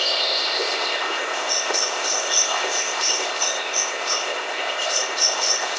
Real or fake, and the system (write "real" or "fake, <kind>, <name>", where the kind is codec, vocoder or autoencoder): fake, codec, ZipCodec